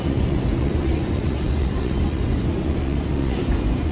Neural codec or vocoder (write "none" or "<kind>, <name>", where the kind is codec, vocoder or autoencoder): vocoder, Vocos